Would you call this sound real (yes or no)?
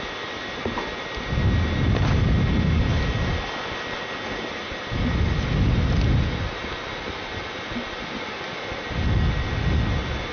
yes